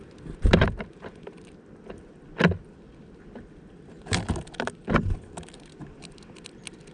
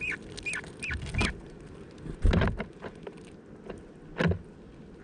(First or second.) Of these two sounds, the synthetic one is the first